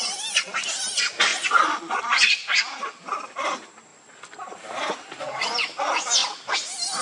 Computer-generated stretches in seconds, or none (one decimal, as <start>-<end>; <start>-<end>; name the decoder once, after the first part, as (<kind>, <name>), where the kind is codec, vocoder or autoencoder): 1.3-2.0 (vocoder, Vocos)